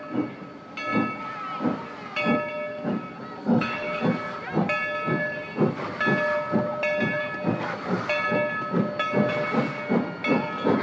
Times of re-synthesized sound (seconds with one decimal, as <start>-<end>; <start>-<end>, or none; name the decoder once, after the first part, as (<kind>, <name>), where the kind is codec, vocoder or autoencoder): 3.4-4.0 (codec, DAC)